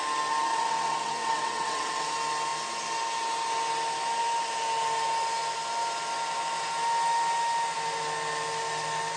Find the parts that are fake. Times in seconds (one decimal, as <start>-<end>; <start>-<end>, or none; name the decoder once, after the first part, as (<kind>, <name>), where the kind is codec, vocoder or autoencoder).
0.5-2.1 (vocoder, WaveNeXt)